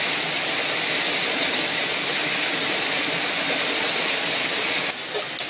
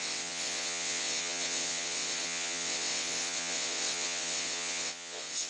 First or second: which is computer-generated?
second